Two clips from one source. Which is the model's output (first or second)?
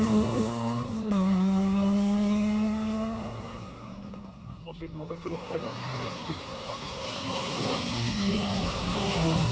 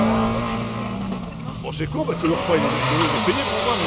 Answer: first